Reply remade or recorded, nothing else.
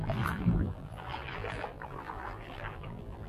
remade